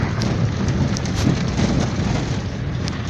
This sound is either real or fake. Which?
real